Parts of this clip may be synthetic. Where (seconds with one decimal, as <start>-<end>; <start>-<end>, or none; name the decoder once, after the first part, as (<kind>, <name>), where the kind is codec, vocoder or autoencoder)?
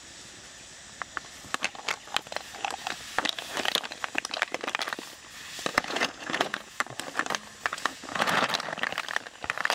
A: 5.7-6.8 (vocoder, Vocos); 7.7-8.5